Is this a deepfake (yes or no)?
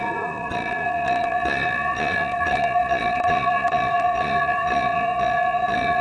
yes